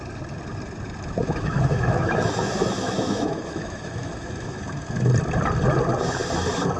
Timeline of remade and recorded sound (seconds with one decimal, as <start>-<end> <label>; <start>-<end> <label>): 0.0-1.2 recorded; 1.2-4.6 remade; 4.6-6.8 recorded